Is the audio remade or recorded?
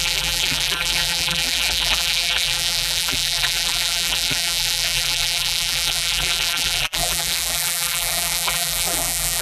remade